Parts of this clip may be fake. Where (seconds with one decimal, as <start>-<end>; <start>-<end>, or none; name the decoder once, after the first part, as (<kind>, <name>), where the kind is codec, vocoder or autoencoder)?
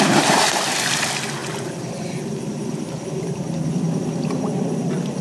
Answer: none